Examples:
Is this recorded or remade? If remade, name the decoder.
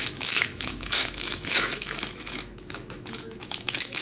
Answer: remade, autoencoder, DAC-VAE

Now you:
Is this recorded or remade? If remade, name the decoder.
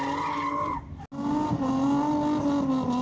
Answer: recorded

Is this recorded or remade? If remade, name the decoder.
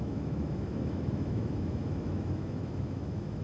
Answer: remade, autoencoder, DAC-VAE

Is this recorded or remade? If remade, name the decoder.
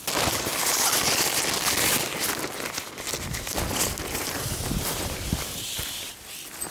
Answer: recorded